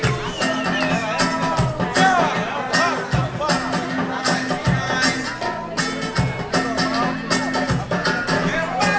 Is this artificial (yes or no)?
no